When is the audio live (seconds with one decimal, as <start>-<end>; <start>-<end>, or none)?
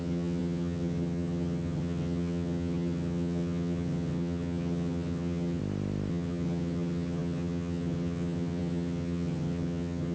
5.6-6.1